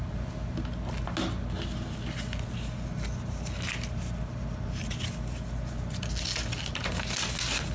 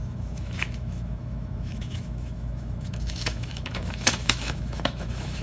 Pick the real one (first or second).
first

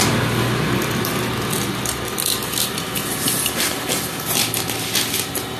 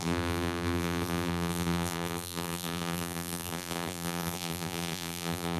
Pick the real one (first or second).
first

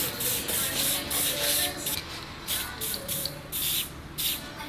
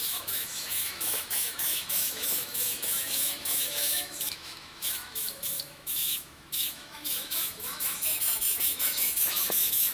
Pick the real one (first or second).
first